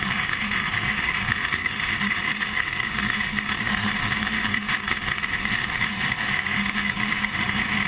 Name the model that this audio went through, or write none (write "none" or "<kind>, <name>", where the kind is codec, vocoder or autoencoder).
autoencoder, DAC-VAE